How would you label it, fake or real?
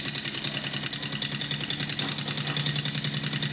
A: real